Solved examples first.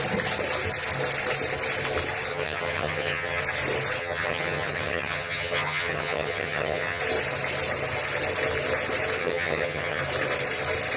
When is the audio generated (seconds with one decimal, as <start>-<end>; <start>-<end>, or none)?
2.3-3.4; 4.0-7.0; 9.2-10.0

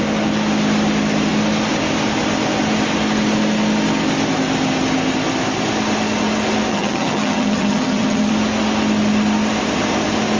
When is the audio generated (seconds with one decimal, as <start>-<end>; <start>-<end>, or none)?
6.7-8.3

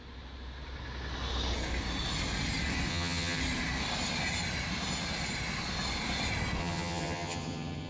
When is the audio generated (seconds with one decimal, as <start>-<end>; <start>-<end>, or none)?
2.9-3.4; 6.6-7.9

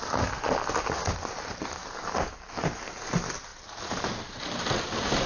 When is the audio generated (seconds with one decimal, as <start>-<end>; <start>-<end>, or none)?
none

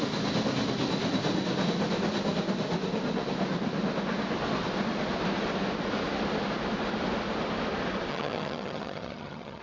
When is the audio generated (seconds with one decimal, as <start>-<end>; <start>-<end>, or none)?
8.1-9.6